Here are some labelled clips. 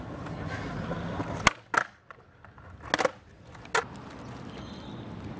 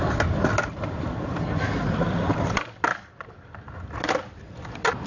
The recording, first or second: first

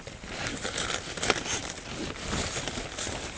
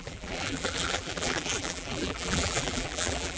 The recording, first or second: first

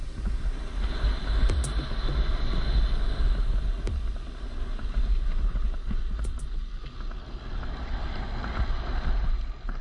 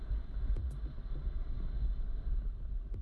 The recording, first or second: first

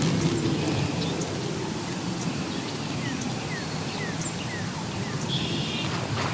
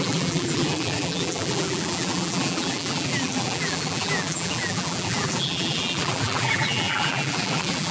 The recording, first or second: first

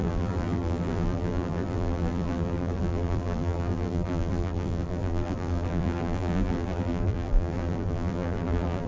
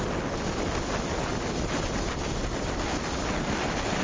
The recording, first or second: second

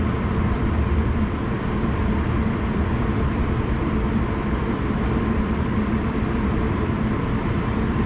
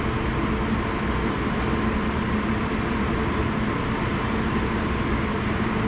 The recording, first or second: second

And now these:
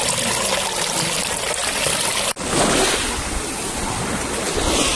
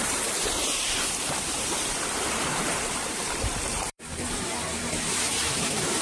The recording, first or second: first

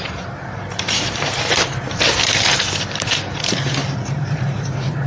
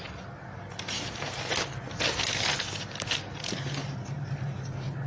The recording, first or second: second